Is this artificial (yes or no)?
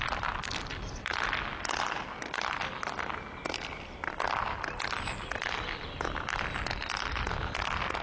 no